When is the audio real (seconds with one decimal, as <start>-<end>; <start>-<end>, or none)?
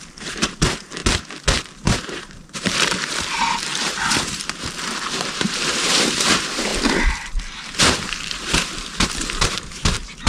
1.0-1.7; 6.7-8.2